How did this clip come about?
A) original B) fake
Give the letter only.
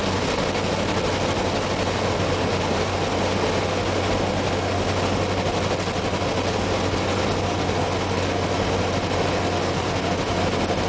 A